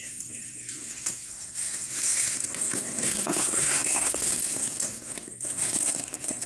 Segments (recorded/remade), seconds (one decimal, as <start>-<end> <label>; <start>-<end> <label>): 0.0-6.5 remade